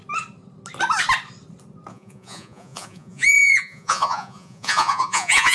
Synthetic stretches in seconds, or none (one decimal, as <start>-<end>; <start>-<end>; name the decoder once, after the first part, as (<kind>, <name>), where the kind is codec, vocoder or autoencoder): 1.9-5.5 (vocoder, Vocos)